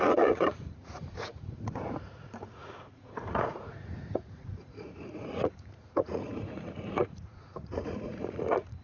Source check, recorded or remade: remade